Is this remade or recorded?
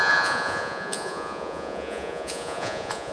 remade